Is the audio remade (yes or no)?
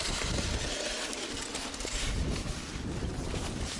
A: no